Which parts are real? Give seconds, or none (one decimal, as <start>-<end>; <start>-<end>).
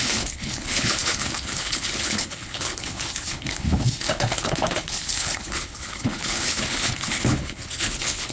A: none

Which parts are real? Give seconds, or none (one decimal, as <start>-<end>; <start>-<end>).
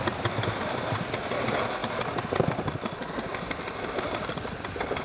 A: 0.0-5.0